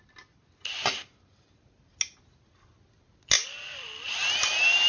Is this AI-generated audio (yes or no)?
no